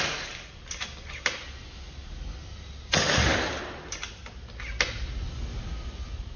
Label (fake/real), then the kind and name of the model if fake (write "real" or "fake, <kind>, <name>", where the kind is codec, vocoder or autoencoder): real